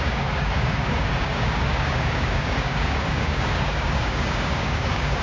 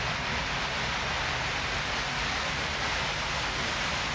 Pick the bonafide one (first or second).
second